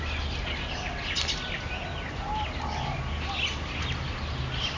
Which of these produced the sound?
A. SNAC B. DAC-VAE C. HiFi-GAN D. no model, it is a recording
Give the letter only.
D